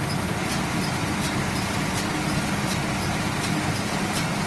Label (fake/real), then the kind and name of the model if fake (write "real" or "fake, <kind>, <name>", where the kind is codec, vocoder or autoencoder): real